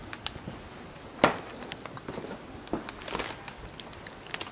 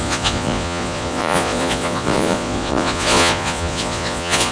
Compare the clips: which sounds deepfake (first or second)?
second